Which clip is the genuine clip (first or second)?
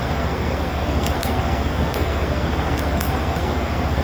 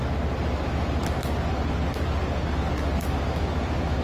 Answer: second